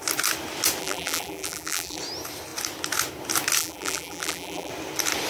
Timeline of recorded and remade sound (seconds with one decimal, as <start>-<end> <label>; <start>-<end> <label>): 0.0-0.8 recorded; 0.8-2.0 remade; 2.0-3.6 recorded; 3.6-4.7 remade; 4.7-5.3 recorded